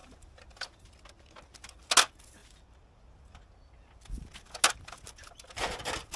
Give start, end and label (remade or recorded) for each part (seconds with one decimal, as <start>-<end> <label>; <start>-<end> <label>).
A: 0.0-0.9 remade; 0.9-2.4 recorded; 2.4-3.7 remade; 3.7-6.2 recorded

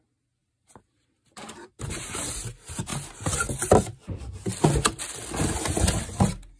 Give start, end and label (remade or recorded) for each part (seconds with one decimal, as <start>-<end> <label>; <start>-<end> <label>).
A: 0.0-0.4 recorded; 0.4-2.3 remade; 2.3-6.6 recorded